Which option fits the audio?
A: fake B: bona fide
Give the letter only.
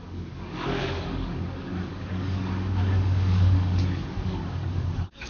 A